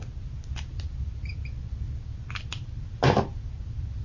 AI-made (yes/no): no